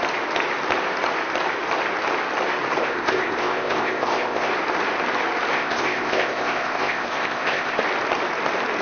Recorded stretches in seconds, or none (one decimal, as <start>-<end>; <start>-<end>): 0.0-2.8; 4.5-5.5; 7.8-8.8